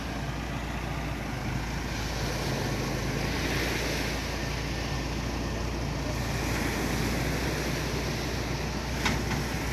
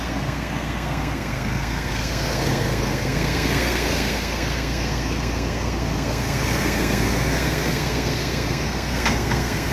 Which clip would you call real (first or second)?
first